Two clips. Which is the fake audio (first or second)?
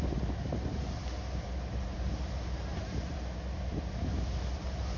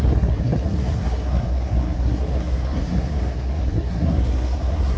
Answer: second